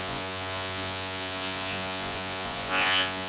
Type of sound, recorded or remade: remade